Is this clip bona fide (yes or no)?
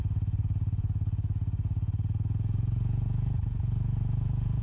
no